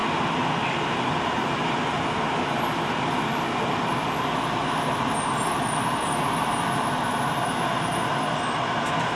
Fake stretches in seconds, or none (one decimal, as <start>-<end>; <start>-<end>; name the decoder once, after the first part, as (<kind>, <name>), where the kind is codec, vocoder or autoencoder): none